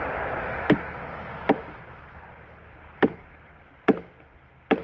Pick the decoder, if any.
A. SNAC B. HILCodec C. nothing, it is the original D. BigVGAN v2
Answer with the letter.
C